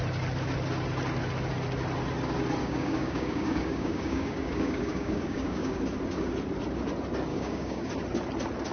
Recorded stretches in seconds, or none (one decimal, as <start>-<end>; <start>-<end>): 0.0-2.6; 5.8-7.3; 7.9-8.7